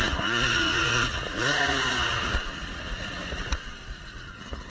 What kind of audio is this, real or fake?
fake